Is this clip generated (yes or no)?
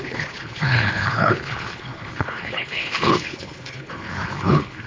yes